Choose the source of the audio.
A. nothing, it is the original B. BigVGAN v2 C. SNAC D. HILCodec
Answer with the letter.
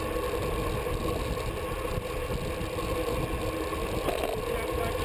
A